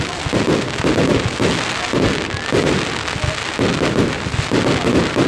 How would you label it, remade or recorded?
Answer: recorded